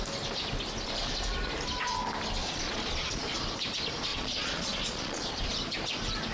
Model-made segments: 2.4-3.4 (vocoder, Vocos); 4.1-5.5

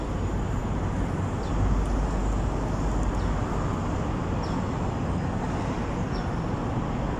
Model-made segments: none